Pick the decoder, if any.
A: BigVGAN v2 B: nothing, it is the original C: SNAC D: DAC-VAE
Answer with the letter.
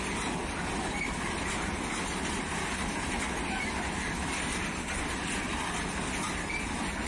B